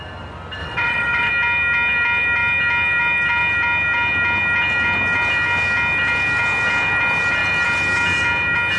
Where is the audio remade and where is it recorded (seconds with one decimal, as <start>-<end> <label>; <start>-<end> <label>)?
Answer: 0.0-0.6 recorded; 0.6-1.3 remade; 1.3-8.8 recorded